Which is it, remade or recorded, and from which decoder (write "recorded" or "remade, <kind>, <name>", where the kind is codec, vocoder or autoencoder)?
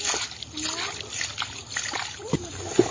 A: recorded